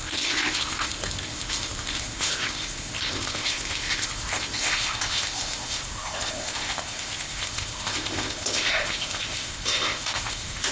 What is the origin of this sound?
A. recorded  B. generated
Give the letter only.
B